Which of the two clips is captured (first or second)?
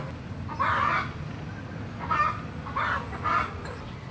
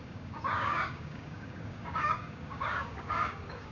first